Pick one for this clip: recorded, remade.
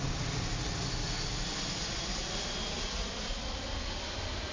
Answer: recorded